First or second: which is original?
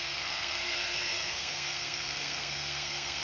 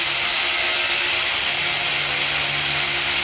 second